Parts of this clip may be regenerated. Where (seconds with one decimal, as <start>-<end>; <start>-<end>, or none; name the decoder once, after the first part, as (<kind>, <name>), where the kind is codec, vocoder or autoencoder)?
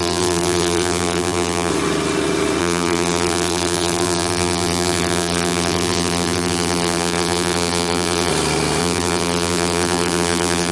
0.0-1.7 (vocoder, BigVGAN v2); 2.6-8.3; 8.8-10.7